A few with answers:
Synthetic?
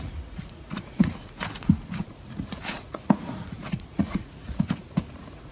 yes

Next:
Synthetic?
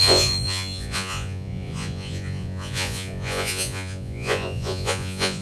yes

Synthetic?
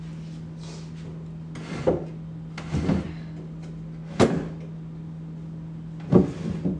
no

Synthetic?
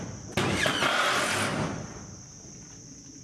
no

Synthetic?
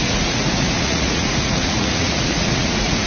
yes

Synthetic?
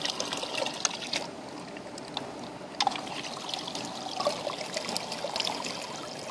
no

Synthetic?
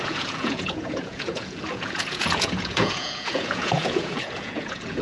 yes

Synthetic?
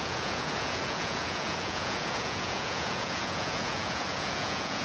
yes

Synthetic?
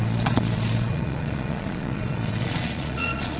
yes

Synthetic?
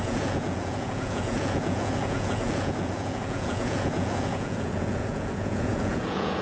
yes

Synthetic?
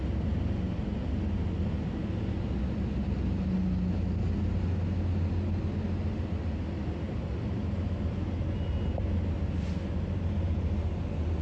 no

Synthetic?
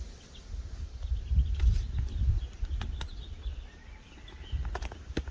no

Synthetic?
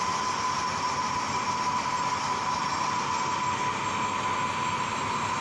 no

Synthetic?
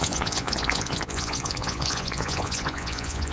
yes